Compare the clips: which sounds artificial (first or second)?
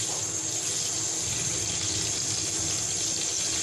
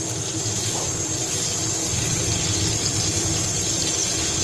second